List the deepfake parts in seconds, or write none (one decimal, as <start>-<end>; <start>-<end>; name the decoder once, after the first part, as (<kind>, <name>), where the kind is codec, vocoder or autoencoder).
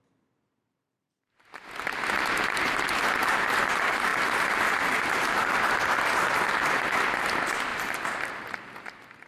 4.1-4.7 (vocoder, BigVGAN v2)